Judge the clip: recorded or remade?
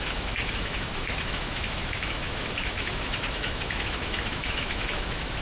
remade